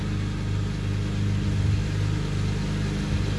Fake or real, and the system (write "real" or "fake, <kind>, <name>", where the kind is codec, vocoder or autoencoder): real